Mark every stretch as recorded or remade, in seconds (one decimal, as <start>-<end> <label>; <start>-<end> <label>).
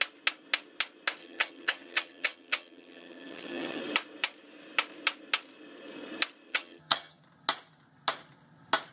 0.0-1.2 recorded; 1.2-3.8 remade; 3.8-6.5 recorded; 6.5-7.2 remade; 7.2-8.9 recorded